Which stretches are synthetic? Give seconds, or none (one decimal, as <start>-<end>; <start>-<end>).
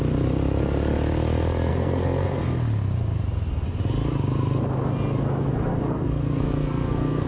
1.7-2.4; 5.5-7.3